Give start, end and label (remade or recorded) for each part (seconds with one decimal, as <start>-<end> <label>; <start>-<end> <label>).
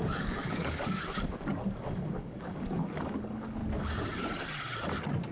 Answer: 0.0-3.6 remade; 3.6-5.3 recorded